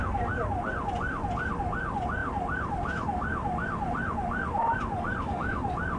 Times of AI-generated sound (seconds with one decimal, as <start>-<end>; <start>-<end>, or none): 2.2-6.0